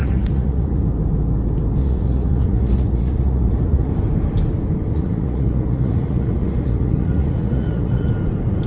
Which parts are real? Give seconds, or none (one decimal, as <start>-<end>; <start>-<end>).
0.8-1.8; 3.9-4.9; 8.1-8.7